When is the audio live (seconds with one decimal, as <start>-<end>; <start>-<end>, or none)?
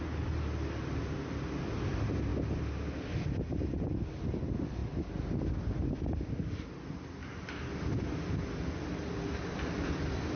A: 0.0-10.4